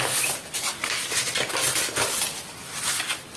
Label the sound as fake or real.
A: real